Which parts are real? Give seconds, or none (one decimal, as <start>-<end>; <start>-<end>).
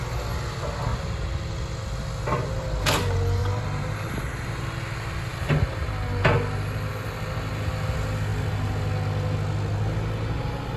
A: 0.0-3.4; 4.1-10.8